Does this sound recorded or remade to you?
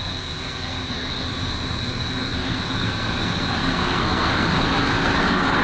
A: remade